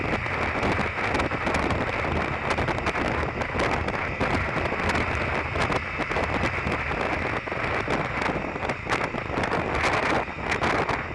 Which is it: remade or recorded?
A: recorded